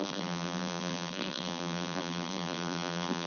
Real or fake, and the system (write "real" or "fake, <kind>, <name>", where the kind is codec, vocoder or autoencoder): fake, vocoder, BigVGAN v2